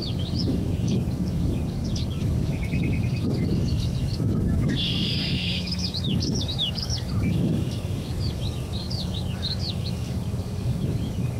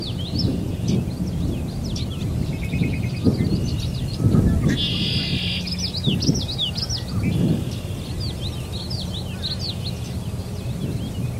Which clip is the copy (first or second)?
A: first